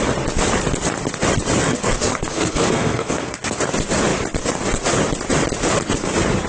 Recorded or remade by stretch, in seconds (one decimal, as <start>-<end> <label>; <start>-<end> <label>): 0.0-1.6 recorded; 1.6-3.6 remade; 3.6-6.5 recorded